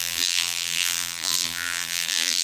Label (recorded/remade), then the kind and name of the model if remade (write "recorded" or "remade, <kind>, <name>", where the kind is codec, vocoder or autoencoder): remade, vocoder, BigVGAN v2